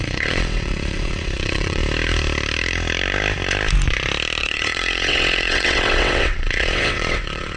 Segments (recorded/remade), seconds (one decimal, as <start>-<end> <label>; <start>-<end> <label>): 0.0-1.8 remade; 1.8-4.4 recorded; 4.4-7.6 remade